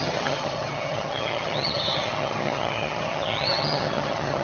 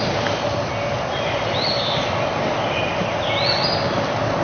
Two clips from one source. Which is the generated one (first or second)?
first